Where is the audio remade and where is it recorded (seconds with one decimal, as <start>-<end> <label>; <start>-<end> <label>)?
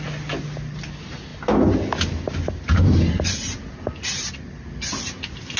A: 0.0-5.6 recorded